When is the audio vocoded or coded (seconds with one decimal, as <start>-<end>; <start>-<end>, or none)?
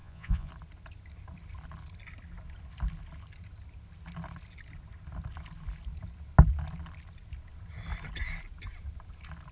0.0-0.5